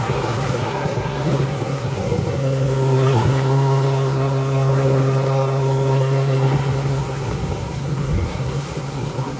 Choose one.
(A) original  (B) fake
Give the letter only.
B